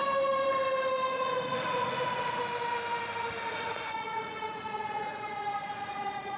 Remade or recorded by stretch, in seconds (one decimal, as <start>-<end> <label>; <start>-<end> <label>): 0.0-1.1 recorded; 1.1-2.4 remade; 2.4-3.5 recorded; 3.5-6.4 remade